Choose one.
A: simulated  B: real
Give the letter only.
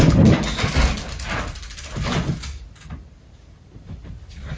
B